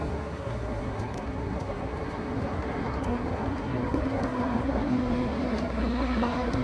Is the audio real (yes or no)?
no